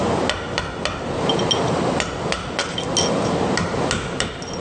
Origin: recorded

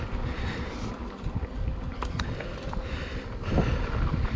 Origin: recorded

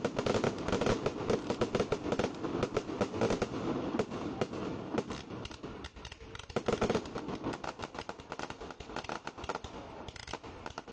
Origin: recorded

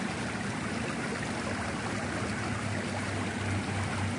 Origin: recorded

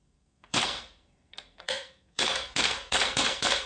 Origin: remade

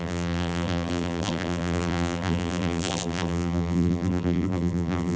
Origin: remade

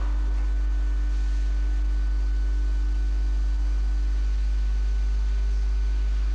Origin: recorded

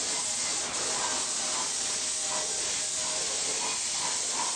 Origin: recorded